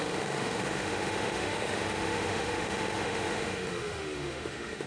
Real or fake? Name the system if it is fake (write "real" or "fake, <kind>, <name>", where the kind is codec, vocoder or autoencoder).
fake, autoencoder, DAC-VAE